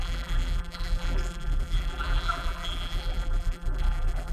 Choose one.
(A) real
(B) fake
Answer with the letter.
B